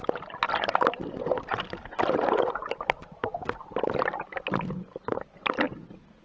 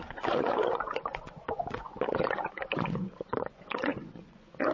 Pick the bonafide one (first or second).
first